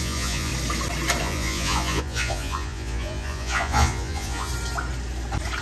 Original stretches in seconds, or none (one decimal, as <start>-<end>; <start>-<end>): 0.5-1.2; 4.5-5.6